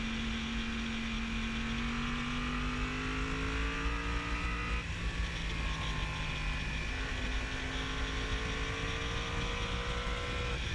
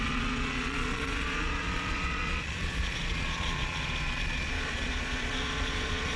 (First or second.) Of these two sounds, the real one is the first